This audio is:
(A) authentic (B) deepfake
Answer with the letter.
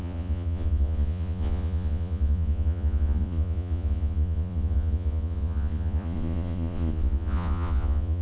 B